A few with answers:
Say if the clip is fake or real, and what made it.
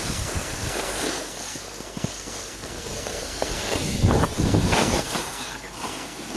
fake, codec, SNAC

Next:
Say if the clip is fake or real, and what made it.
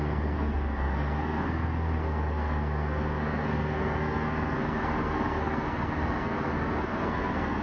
fake, codec, SNAC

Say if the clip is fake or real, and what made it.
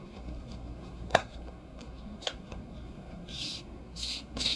fake, codec, SNAC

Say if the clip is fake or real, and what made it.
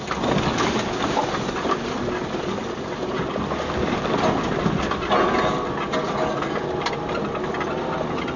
real